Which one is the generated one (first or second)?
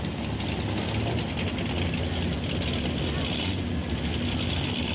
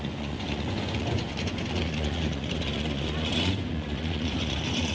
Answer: second